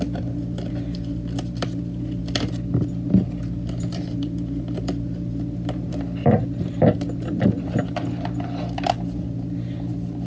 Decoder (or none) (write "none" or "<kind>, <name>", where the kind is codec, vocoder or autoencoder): none